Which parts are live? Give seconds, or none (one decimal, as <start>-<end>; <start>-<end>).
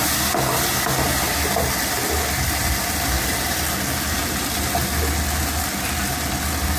0.0-6.8